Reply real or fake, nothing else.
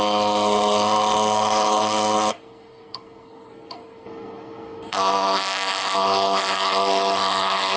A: fake